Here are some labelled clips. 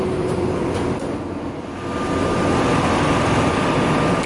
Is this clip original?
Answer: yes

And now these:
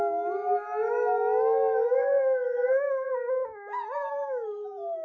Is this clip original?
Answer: no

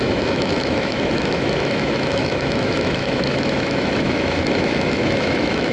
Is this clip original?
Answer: no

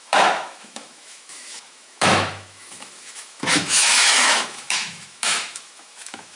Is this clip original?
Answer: no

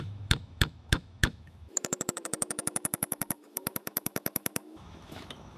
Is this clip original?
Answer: no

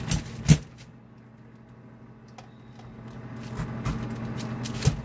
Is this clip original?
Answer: yes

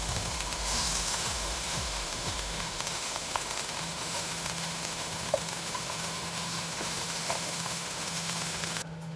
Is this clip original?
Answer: no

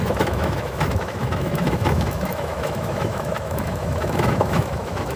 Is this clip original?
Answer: no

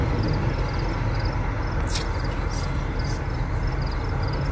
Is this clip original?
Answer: yes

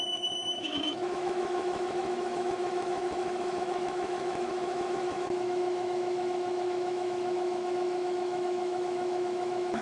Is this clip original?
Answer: no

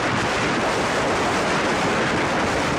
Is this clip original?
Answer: yes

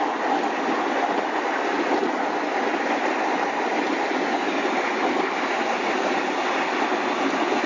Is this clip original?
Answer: yes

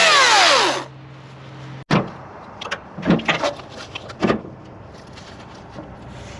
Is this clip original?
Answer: yes